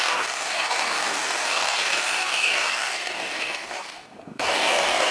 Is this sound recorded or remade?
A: remade